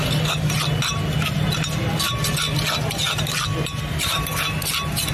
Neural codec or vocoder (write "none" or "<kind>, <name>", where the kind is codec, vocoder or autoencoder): none